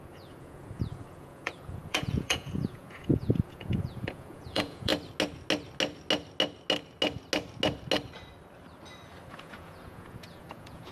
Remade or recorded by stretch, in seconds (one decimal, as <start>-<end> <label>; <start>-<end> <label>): 0.0-4.9 remade; 4.9-9.3 recorded; 9.3-10.9 remade